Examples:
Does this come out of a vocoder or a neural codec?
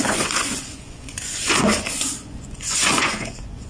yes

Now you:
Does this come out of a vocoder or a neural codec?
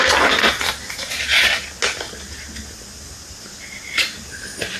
no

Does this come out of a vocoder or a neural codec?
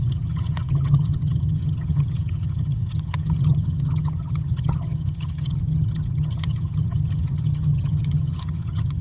yes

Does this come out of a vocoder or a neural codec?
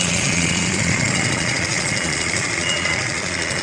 yes